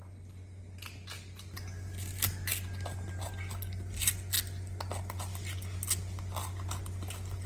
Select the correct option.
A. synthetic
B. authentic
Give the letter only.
B